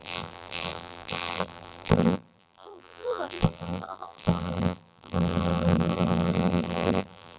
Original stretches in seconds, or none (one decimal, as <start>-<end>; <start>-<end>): none